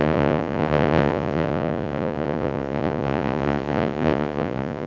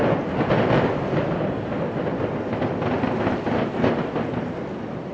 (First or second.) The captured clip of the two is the second